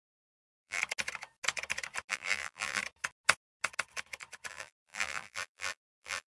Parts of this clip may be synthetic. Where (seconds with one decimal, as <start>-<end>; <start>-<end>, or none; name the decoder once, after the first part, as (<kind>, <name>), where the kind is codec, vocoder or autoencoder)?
0.0-0.8 (vocoder, BigVGAN v2); 2.1-2.8; 4.5-6.4